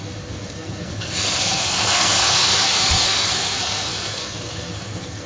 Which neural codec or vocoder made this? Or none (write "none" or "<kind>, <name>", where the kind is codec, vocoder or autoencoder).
codec, SNAC